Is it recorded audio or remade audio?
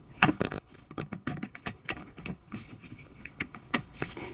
remade